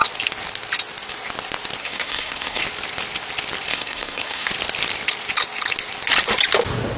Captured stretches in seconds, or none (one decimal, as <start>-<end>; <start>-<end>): 0.0-1.8; 2.6-3.7; 4.5-7.0

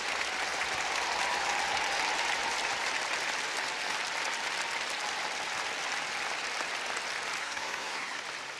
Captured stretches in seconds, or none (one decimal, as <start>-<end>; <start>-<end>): 0.0-7.4; 8.2-8.6

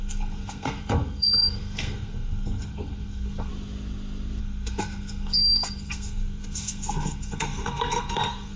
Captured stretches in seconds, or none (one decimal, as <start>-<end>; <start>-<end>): 3.5-4.4

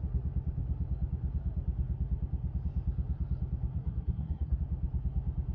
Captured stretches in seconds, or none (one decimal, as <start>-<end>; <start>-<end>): 0.0-3.7; 4.6-5.5

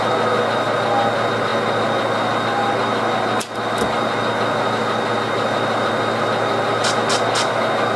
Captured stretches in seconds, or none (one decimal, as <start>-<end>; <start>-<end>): 0.0-8.0

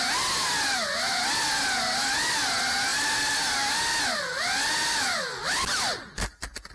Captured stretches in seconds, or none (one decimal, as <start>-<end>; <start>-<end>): 0.0-6.7